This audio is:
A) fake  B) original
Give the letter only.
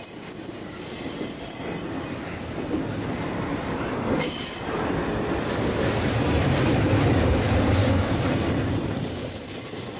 B